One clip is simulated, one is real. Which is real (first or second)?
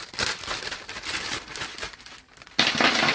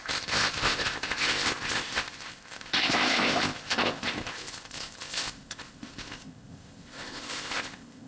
first